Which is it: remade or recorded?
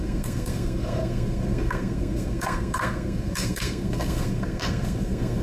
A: remade